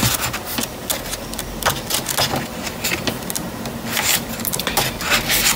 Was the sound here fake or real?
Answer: real